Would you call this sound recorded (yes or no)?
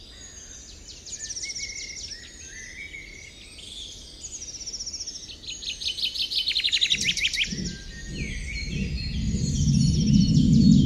yes